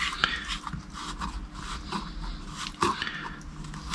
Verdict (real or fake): real